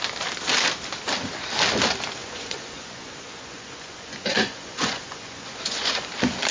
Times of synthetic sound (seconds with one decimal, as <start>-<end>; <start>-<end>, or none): 2.2-6.1